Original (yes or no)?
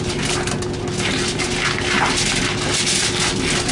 yes